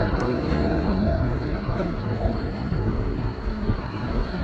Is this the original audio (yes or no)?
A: no